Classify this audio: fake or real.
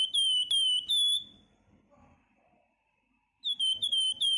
fake